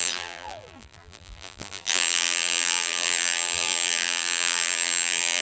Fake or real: fake